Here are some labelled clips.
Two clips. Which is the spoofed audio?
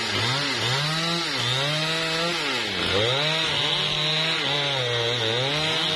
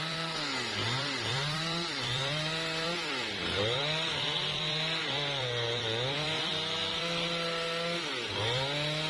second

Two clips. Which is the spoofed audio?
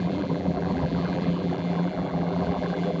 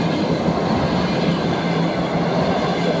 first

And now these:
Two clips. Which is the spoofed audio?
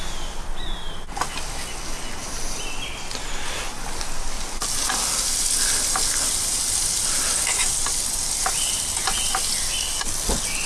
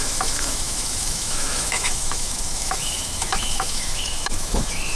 second